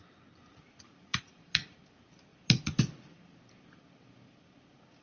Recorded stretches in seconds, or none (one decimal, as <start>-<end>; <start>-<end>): 0.0-1.1; 1.8-5.0